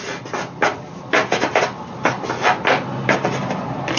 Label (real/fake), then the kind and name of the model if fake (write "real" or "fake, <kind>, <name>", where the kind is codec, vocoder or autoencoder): real